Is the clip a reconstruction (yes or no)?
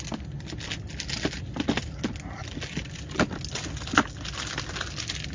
no